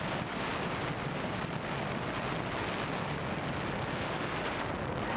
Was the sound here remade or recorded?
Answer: recorded